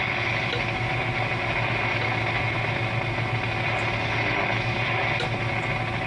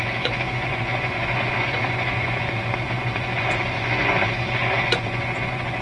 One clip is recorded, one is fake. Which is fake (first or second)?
second